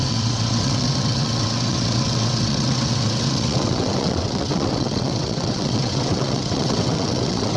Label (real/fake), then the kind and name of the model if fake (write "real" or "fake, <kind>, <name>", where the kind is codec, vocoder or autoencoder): fake, vocoder, WaveNeXt